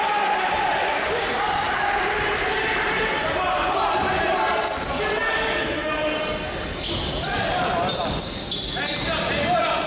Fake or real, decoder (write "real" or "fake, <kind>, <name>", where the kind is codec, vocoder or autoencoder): real